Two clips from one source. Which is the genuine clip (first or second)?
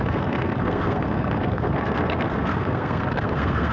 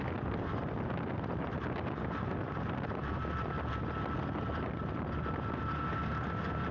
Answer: second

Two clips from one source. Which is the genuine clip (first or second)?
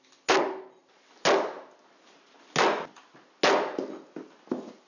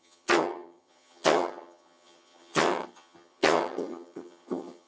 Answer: first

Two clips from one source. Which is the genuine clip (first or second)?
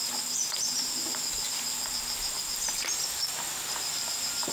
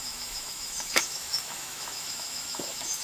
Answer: first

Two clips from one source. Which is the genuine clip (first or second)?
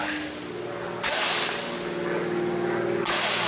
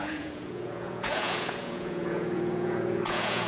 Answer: first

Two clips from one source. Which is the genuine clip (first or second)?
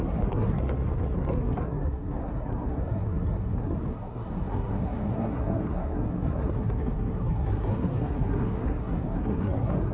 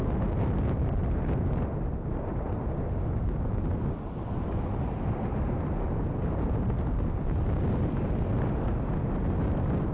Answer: second